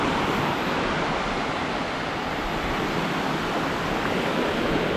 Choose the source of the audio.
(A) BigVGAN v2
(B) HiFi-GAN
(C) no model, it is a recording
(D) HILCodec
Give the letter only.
C